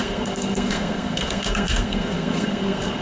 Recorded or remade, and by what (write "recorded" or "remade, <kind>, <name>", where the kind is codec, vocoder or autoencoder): remade, codec, SNAC